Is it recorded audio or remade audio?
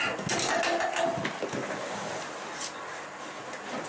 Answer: recorded